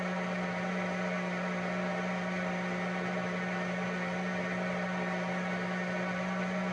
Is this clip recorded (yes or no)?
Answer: yes